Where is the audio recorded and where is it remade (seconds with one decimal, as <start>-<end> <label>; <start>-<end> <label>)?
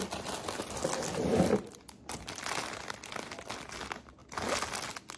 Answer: 0.0-5.2 recorded